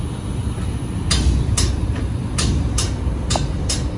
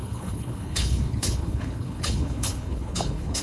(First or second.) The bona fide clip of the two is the first